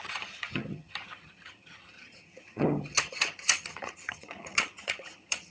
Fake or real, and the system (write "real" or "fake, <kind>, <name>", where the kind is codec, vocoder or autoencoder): fake, vocoder, HiFi-GAN